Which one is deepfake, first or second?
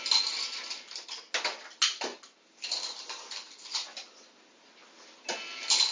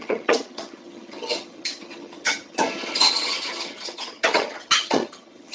second